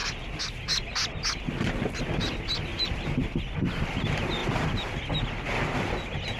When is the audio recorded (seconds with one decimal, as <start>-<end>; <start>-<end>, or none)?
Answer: 0.0-2.7; 3.4-4.4; 4.9-6.4